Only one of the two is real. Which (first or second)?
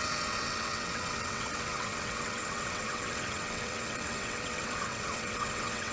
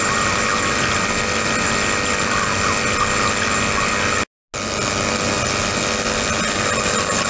second